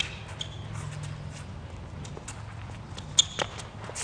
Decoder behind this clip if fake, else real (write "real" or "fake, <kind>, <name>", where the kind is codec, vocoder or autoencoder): real